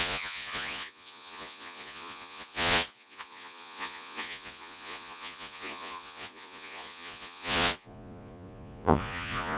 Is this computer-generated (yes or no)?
yes